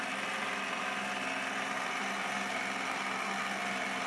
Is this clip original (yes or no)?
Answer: yes